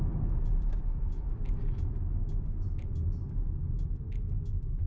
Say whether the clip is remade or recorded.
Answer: recorded